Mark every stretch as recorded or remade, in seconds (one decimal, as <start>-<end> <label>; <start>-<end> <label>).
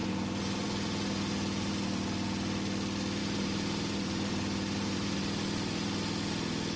0.0-1.7 remade; 1.7-3.2 recorded; 3.2-5.2 remade; 5.2-6.8 recorded